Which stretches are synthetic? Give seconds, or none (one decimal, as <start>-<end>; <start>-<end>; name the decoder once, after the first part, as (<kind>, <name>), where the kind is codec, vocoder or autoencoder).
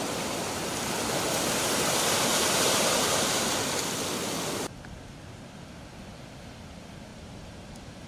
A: 0.0-0.7 (vocoder, BigVGAN v2); 2.3-3.5; 7.1-8.1